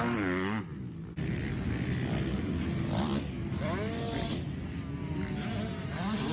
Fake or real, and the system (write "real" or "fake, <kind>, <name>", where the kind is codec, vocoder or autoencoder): real